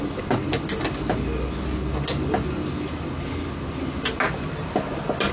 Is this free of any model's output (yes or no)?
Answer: yes